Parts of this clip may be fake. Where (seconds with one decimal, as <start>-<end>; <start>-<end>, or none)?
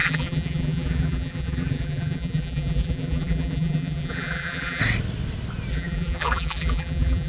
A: 0.0-4.8; 5.7-7.3